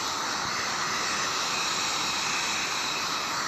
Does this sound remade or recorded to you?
recorded